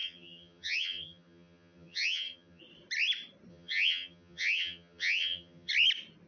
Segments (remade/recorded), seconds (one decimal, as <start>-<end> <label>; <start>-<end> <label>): 0.0-2.6 remade; 2.6-3.5 recorded; 3.5-5.7 remade; 5.7-6.3 recorded